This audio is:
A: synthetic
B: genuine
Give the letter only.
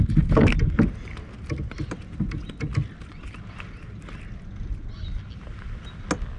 B